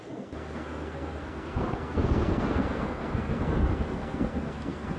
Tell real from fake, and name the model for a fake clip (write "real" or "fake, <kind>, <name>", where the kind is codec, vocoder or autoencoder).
fake, codec, SNAC